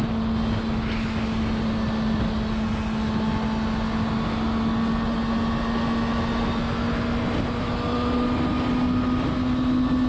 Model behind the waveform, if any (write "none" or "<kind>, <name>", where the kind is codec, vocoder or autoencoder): none